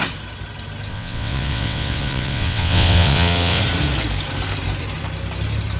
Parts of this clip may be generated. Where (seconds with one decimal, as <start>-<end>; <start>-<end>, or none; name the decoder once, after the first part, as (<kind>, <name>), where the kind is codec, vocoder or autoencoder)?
0.9-3.6 (vocoder, WaveNeXt)